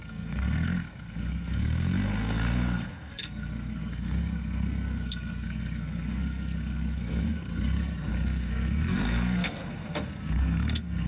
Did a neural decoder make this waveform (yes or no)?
yes